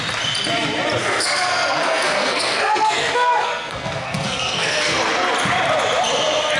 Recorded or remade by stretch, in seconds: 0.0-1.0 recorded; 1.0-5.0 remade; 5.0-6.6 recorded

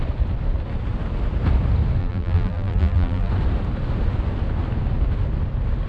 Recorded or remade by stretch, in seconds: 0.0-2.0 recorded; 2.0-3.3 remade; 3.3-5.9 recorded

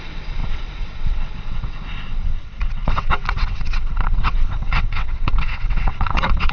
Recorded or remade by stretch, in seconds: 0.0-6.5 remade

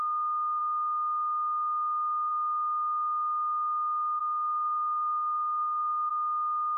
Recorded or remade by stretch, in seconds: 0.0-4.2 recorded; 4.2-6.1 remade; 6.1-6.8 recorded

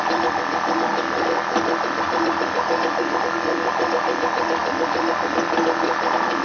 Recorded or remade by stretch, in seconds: 0.0-6.4 recorded